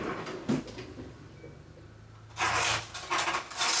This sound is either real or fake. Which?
real